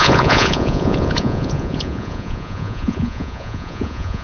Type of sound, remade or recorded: remade